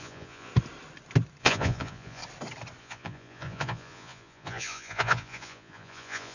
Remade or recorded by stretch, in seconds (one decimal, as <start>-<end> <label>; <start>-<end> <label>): 0.0-0.5 remade; 0.5-1.4 recorded; 1.4-2.2 remade; 2.2-2.8 recorded; 2.8-6.3 remade